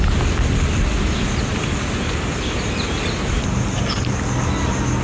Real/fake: real